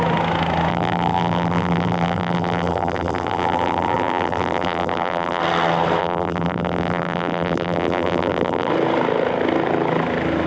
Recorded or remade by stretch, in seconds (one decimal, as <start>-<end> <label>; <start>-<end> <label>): 0.0-0.7 recorded; 0.7-5.4 remade; 5.4-6.0 recorded; 6.0-8.7 remade; 8.7-10.5 recorded